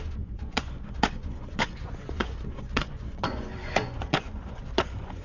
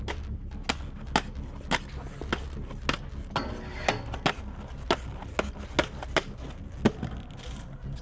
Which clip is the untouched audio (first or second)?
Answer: second